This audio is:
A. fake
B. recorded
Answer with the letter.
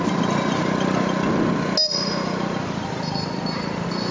B